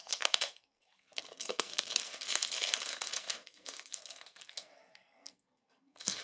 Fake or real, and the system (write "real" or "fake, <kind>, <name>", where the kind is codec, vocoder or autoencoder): fake, codec, SNAC